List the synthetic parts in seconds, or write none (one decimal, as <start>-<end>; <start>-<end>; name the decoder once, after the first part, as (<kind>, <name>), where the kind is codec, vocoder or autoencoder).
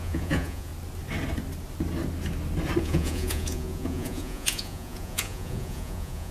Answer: 0.0-0.7 (vocoder, Vocos); 2.8-6.3